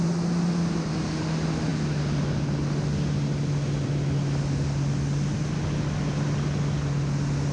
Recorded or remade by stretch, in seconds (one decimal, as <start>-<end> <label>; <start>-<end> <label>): 0.0-7.5 recorded